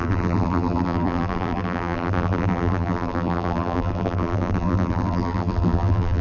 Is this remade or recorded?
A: remade